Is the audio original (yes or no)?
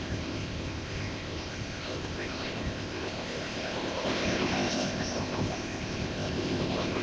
no